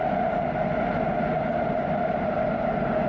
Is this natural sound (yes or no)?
yes